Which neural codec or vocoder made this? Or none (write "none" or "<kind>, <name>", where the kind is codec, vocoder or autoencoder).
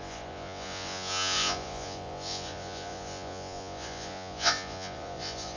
vocoder, Vocos